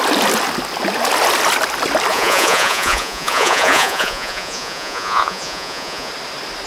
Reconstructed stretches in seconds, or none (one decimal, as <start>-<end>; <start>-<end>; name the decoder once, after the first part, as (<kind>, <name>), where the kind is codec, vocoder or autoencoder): 2.1-6.1 (vocoder, Vocos)